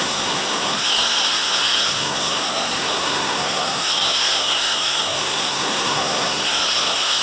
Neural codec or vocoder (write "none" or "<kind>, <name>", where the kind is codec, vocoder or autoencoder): codec, SNAC